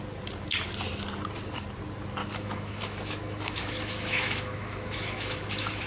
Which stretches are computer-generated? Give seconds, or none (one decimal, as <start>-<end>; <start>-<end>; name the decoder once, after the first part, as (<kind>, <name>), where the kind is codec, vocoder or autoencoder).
2.2-5.9 (autoencoder, DAC-VAE)